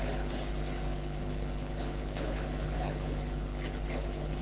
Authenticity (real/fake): fake